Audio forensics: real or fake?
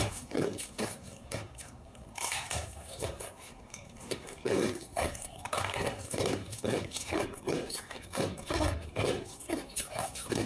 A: fake